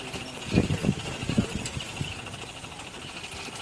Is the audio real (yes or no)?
yes